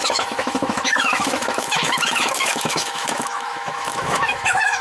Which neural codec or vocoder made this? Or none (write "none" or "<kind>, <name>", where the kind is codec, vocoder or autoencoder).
autoencoder, DAC-VAE